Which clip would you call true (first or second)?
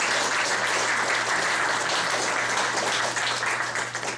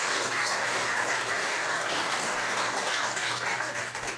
first